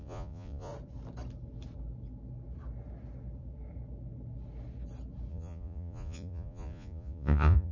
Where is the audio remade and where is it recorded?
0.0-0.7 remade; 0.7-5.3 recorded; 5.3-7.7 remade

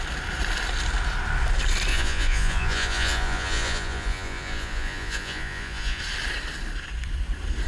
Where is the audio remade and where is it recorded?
0.0-1.9 recorded; 1.9-6.0 remade; 6.0-7.7 recorded

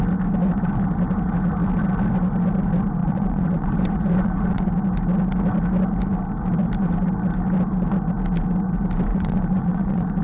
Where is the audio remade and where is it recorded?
0.0-3.0 recorded; 3.0-4.7 remade; 4.7-9.1 recorded; 9.1-10.2 remade